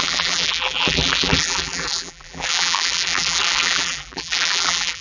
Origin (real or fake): fake